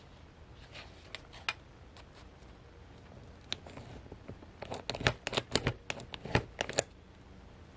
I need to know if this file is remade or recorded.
recorded